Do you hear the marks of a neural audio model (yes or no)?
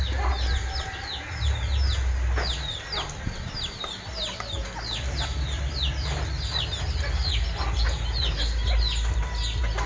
no